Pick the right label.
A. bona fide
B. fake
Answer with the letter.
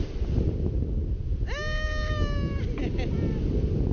A